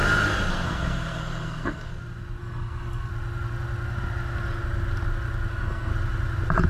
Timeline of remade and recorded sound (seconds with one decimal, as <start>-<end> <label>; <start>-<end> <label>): 0.0-0.5 recorded; 0.5-1.9 remade; 1.9-2.4 recorded; 2.4-3.1 remade; 3.1-5.5 recorded; 5.5-5.9 remade; 5.9-6.7 recorded

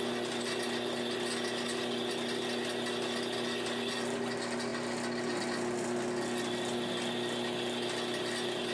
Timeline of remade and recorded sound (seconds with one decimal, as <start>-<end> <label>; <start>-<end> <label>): 0.0-8.7 recorded

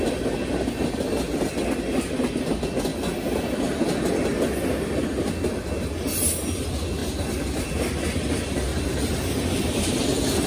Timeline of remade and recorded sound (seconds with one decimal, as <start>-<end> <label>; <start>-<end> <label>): 0.0-8.7 recorded; 8.7-10.0 remade; 10.0-10.5 recorded